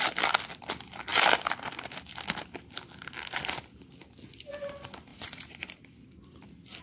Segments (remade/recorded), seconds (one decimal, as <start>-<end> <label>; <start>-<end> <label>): 0.0-5.1 recorded; 5.1-5.8 remade; 5.8-6.8 recorded